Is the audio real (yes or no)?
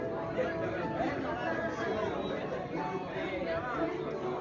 yes